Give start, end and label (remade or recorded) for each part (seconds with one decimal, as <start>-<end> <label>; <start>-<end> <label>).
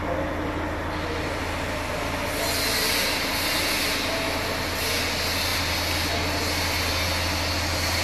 0.0-8.0 recorded